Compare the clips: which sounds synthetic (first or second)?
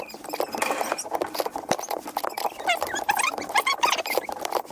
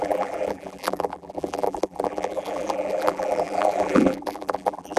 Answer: second